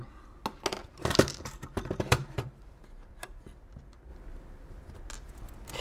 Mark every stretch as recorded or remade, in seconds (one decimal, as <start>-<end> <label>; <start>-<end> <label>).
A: 0.0-0.8 recorded; 0.8-3.4 remade; 3.4-5.8 recorded